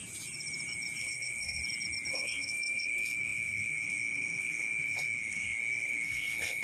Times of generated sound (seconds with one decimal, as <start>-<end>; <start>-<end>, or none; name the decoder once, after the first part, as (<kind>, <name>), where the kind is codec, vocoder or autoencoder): 1.0-1.6 (codec, SNAC); 2.1-6.6